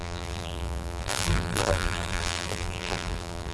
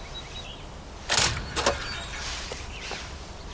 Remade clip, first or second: first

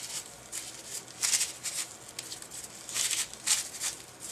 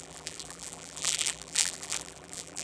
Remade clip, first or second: second